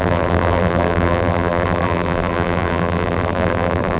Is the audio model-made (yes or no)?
yes